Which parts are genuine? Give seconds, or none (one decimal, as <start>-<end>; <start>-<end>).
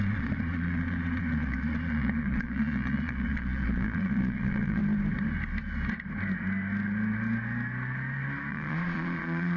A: 4.8-8.5